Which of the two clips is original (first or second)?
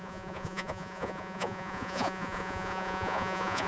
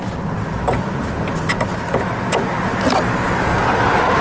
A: second